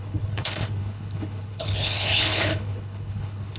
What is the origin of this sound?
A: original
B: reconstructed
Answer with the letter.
B